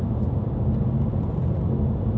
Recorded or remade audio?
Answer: recorded